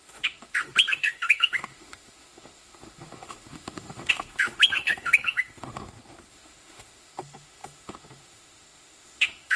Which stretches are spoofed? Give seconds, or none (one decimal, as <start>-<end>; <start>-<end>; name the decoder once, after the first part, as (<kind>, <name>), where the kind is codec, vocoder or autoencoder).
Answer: 0.0-9.6 (autoencoder, DAC-VAE)